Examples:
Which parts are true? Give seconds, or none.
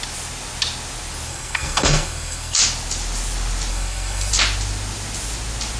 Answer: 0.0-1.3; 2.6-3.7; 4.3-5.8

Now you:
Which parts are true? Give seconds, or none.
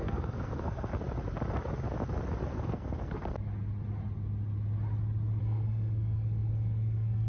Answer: 0.9-2.5; 3.2-5.4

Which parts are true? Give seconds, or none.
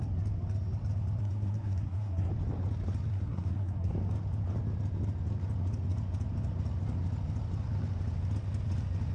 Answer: 0.0-1.2; 2.3-3.1; 3.9-9.1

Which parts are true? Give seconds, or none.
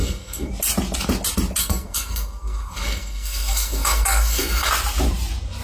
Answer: 0.5-1.6; 4.7-5.6